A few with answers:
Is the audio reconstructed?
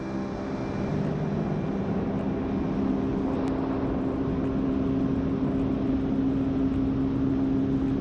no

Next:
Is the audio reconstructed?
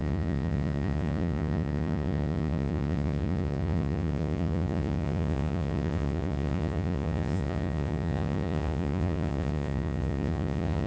yes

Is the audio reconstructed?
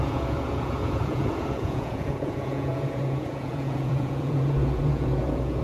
yes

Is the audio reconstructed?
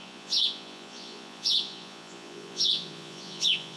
yes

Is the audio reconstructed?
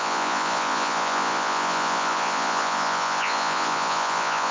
yes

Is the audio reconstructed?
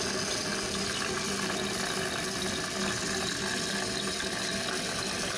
no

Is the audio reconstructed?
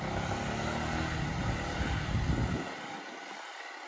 no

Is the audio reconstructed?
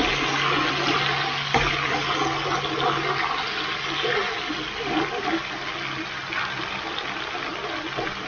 no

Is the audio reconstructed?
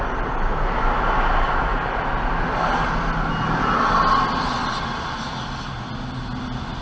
no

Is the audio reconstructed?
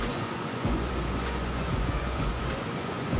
yes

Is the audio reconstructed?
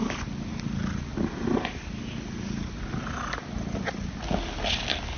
no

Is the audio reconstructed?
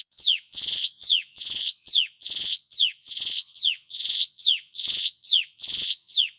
yes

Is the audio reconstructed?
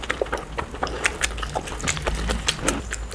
no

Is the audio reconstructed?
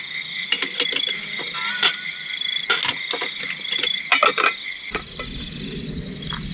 no